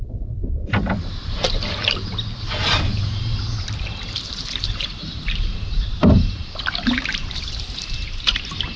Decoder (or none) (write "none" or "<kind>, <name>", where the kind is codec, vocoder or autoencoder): vocoder, BigVGAN v2